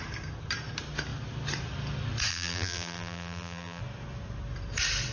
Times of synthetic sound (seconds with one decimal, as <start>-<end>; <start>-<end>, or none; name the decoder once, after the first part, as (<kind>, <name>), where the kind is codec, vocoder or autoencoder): 2.3-3.8 (vocoder, BigVGAN v2)